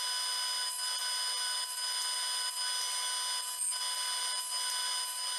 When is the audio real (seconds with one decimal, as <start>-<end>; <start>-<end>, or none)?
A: 0.0-5.4